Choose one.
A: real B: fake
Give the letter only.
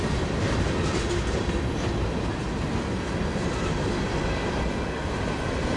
A